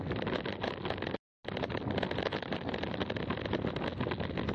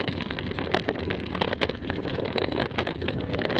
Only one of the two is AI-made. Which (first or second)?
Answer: second